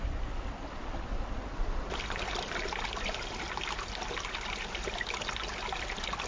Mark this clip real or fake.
real